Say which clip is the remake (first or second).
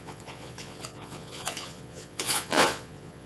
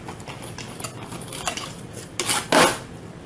first